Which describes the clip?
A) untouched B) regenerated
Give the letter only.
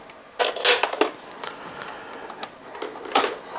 A